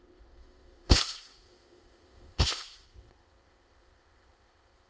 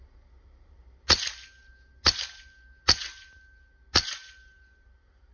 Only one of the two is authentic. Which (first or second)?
second